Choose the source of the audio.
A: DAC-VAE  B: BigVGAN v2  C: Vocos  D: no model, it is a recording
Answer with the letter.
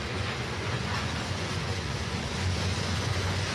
C